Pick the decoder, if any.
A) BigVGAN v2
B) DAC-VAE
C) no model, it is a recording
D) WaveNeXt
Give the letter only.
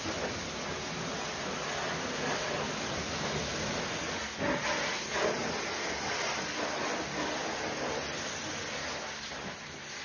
C